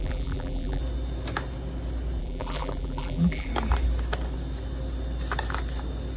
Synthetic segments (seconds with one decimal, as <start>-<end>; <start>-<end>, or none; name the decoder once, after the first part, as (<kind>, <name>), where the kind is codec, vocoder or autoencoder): 0.0-0.8 (vocoder, BigVGAN v2); 2.2-3.5